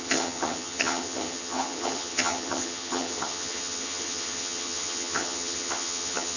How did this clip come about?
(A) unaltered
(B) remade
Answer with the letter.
B